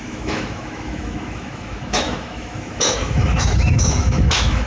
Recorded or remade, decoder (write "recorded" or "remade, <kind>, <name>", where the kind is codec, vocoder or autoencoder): remade, autoencoder, DAC-VAE